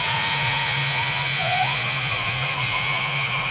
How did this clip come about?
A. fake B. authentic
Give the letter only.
A